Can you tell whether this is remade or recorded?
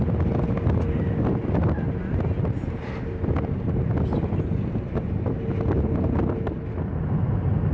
recorded